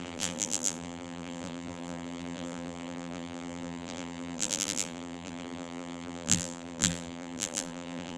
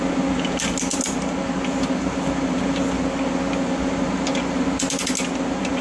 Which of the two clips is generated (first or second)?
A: first